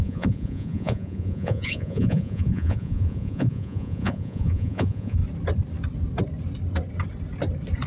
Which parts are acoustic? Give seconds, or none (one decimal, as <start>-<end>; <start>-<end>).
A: 5.2-7.9